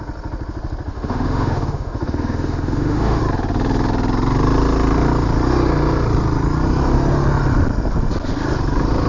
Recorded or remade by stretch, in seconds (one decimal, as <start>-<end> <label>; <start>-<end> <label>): 0.0-0.9 recorded; 0.9-3.2 remade; 3.2-9.1 recorded